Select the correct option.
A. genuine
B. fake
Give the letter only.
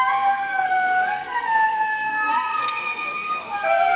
B